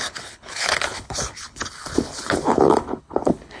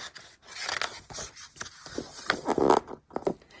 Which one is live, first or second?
second